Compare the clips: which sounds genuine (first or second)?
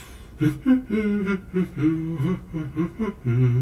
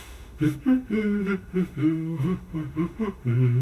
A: first